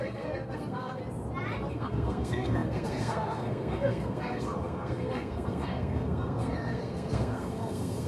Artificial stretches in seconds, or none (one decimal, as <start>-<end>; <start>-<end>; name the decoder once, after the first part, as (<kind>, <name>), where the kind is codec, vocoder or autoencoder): 0.0-1.0 (codec, SNAC); 1.7-8.1